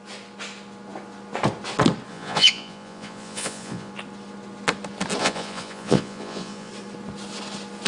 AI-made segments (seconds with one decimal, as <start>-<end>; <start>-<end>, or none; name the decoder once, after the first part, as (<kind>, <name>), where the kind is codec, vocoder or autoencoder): 2.1-3.9 (vocoder, Vocos); 5.2-6.7

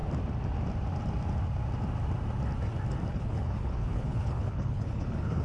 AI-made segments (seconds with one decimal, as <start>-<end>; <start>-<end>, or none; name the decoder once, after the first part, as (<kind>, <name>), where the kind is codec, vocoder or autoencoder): 3.1-5.4 (codec, HILCodec)

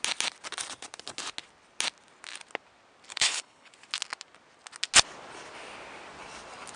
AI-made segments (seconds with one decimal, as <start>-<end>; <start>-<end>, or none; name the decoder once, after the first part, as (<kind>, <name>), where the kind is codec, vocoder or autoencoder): 3.1-3.7 (codec, HILCodec)

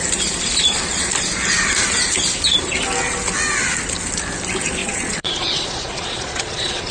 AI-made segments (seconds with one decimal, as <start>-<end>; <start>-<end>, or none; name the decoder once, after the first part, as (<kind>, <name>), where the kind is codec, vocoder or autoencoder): 4.8-6.9 (vocoder, Vocos)

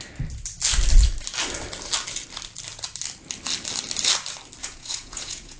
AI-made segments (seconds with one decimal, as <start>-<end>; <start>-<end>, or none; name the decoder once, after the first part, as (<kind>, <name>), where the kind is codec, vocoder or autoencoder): 4.6-5.6 (vocoder, Vocos)

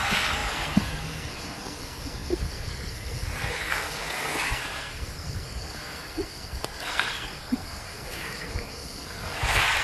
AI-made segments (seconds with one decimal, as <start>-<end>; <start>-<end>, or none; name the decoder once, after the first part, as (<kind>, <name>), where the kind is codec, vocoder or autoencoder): 0.0-9.8 (codec, SNAC)

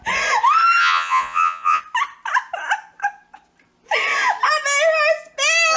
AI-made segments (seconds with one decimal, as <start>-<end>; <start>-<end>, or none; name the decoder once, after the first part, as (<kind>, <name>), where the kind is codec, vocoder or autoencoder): 0.8-1.8 (vocoder, Vocos)